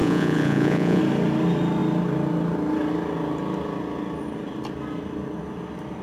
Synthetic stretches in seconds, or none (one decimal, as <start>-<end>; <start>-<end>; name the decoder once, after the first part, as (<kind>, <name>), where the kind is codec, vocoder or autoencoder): 0.0-1.0 (vocoder, Vocos)